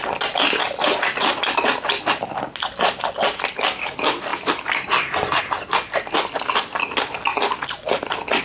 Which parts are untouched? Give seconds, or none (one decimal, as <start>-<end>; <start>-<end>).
0.0-8.4